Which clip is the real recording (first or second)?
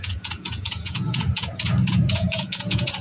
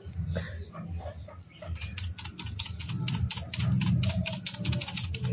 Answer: second